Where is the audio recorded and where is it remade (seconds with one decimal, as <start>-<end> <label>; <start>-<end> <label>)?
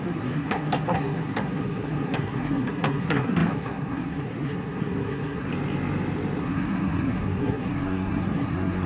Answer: 0.0-5.5 remade; 5.5-6.4 recorded; 6.4-8.9 remade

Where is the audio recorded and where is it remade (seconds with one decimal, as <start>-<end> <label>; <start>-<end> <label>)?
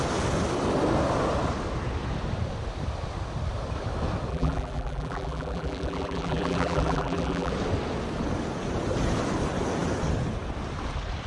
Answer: 0.0-4.3 recorded; 4.3-7.5 remade; 7.5-11.3 recorded